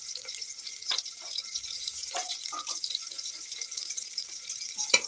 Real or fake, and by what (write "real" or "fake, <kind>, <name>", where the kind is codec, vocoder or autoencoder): fake, vocoder, Vocos